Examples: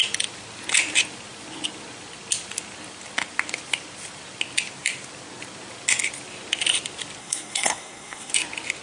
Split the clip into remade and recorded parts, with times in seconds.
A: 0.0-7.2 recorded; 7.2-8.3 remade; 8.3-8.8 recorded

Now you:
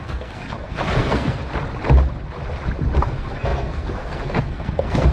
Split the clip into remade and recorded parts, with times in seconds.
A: 0.0-1.4 remade; 1.4-3.0 recorded; 3.0-5.1 remade

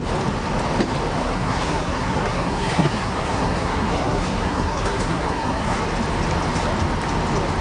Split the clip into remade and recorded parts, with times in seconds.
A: 0.0-1.2 recorded; 1.2-5.8 remade; 5.8-7.6 recorded